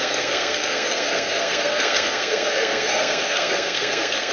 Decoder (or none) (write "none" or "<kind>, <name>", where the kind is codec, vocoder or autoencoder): codec, SNAC